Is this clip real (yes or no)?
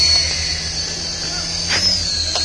yes